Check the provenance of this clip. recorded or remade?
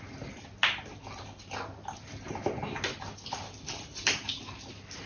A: recorded